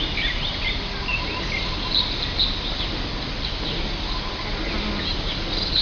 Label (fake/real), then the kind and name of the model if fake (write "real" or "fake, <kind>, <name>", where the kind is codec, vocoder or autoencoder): real